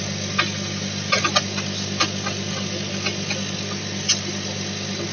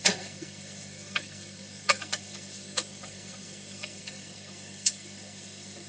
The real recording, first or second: first